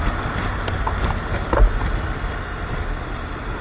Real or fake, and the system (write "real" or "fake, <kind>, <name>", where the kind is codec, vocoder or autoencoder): real